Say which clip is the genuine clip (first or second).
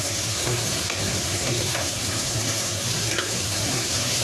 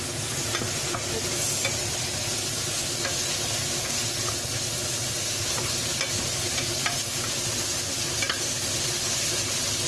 second